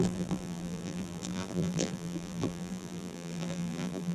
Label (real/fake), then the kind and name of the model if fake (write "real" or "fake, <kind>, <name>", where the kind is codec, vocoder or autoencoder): fake, vocoder, BigVGAN v2